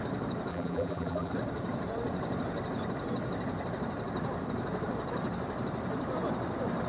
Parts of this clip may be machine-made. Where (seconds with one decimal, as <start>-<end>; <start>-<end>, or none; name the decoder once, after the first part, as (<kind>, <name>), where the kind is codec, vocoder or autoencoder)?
0.5-1.3 (vocoder, BigVGAN v2)